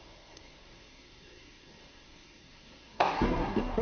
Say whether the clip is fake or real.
fake